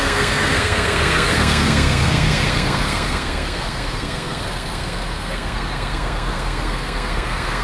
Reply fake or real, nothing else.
fake